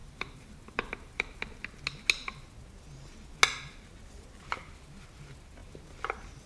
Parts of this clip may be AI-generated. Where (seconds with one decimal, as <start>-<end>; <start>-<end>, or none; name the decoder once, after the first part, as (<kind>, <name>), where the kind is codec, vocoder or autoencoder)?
0.0-1.4 (vocoder, BigVGAN v2)